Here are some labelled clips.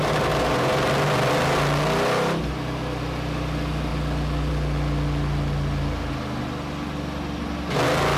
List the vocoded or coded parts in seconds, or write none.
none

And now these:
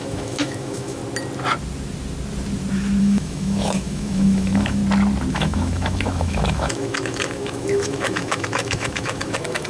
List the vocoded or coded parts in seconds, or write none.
0.0-1.0 (autoencoder, DAC-VAE); 3.0-4.8; 5.3-9.7

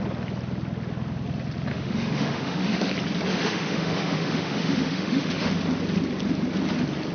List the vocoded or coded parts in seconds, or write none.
1.7-2.9 (autoencoder, DAC-VAE); 3.3-5.5

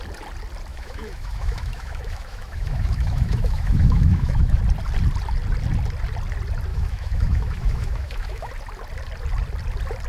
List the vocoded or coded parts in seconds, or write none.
0.7-4.6 (autoencoder, DAC-VAE); 6.7-8.5

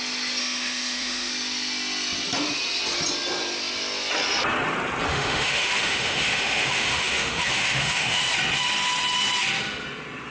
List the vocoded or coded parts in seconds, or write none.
0.4-1.3 (autoencoder, DAC-VAE); 5.1-8.2

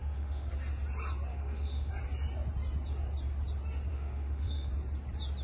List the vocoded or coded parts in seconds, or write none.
0.0-0.5 (autoencoder, DAC-VAE); 1.3-1.9; 3.9-4.7